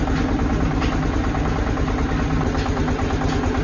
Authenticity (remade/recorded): recorded